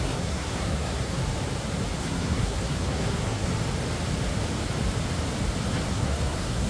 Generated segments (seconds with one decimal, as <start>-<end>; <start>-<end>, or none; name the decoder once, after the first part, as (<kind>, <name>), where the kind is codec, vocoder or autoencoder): 0.0-1.2 (codec, SNAC); 2.0-3.5; 5.9-6.7